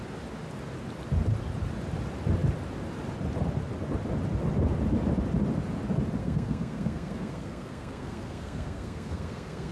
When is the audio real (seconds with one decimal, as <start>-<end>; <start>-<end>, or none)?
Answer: 0.0-6.2